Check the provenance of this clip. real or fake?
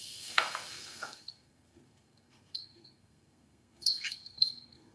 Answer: fake